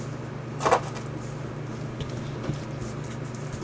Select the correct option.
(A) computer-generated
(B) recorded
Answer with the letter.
A